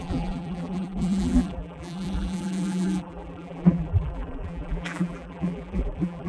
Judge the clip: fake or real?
fake